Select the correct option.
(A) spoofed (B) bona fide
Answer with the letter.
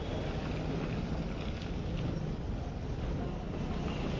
B